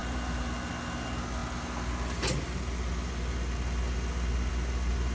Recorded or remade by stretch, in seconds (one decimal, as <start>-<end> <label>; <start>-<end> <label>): 0.0-0.7 remade; 0.7-5.1 recorded